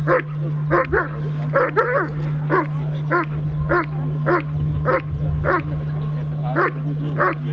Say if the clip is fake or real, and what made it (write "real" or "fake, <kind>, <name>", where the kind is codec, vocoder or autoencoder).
real